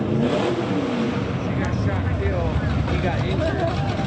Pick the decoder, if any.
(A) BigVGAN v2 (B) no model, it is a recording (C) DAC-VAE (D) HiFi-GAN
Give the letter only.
A